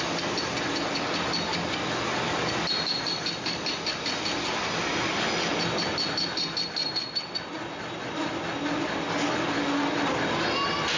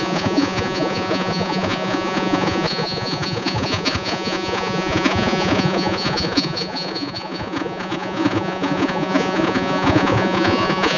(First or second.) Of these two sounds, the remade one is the second